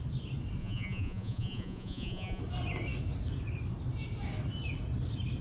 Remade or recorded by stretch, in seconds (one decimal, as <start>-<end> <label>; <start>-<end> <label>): 0.0-0.6 recorded; 0.6-2.4 remade; 2.4-5.4 recorded